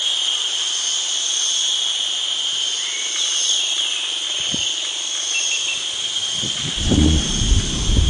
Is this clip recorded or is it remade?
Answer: recorded